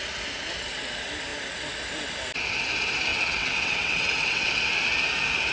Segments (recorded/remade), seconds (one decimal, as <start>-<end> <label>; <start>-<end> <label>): 0.0-3.1 recorded; 3.1-4.5 remade; 4.5-5.5 recorded